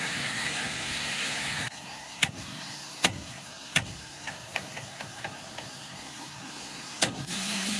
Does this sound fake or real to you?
fake